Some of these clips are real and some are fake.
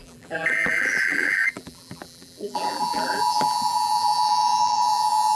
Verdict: fake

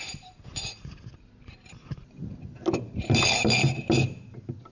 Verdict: real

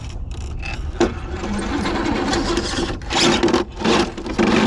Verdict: real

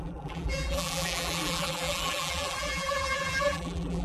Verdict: fake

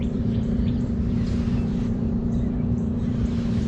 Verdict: fake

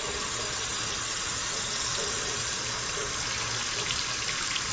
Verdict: real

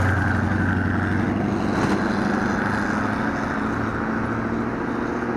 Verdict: real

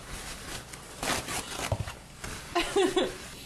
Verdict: fake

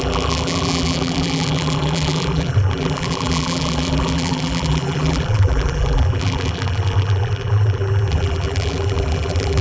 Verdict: fake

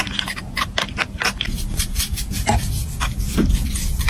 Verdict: fake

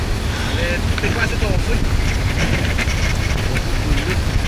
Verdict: real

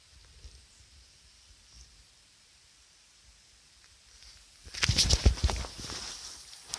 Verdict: fake